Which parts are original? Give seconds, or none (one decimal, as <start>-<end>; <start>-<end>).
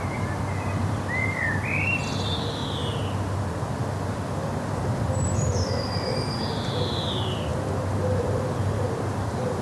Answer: 2.6-3.8